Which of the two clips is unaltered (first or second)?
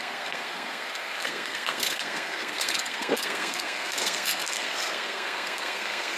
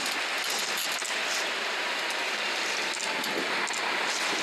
second